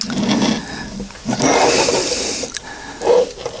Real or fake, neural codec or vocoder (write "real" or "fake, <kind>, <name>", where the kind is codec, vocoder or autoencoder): real